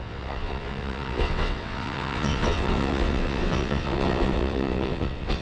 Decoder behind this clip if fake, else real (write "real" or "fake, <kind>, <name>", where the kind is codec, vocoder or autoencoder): fake, vocoder, WaveNeXt